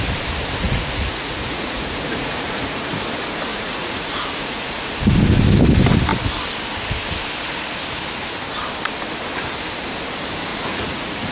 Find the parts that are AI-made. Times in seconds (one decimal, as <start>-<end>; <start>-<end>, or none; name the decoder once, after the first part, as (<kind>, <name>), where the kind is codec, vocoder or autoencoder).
0.6-2.9 (vocoder, Vocos); 3.5-5.1; 10.5-11.3